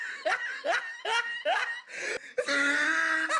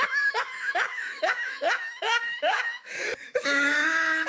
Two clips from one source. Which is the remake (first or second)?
second